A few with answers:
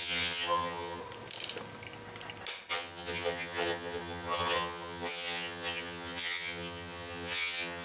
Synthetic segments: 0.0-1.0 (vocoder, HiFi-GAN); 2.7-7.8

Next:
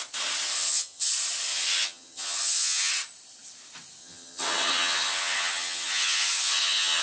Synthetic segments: 0.5-1.1 (vocoder, HiFi-GAN); 1.5-2.9; 4.0-7.0

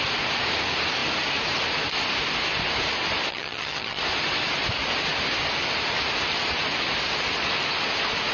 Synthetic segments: 3.3-4.0 (vocoder, HiFi-GAN)

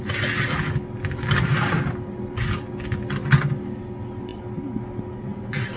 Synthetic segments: none